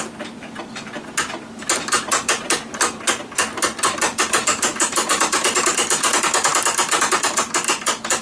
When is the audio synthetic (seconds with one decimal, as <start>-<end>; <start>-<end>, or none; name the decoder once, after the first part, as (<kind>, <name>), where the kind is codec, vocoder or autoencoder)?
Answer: none